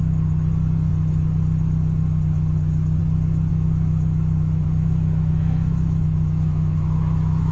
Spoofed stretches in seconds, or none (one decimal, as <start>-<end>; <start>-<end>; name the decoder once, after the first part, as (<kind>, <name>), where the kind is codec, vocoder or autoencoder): 3.5-7.5 (autoencoder, DAC-VAE)